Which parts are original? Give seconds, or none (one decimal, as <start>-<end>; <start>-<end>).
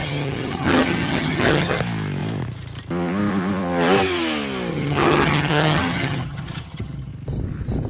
1.8-4.7; 7.1-7.9